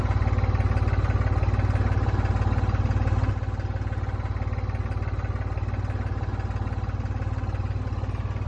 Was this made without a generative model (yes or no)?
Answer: yes